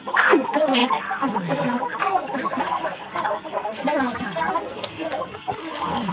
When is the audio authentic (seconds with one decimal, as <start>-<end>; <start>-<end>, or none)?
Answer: none